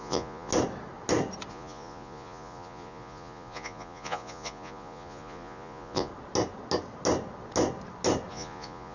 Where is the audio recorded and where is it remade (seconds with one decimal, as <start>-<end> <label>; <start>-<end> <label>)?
0.0-0.5 remade; 0.5-1.5 recorded; 1.5-6.1 remade; 6.1-8.3 recorded; 8.3-8.9 remade